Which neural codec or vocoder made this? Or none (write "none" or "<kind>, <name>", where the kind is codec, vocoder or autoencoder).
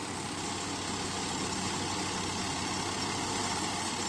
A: none